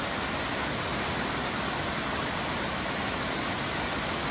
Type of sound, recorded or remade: recorded